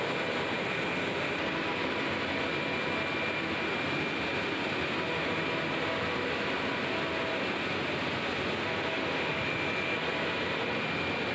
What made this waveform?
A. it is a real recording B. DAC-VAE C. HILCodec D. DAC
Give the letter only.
A